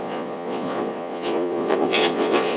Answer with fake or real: fake